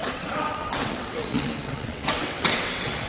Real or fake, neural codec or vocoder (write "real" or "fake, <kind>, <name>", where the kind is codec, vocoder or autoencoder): fake, vocoder, WaveNeXt